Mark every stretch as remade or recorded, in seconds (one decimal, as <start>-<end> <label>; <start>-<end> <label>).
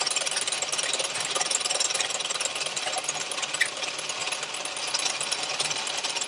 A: 0.0-6.3 recorded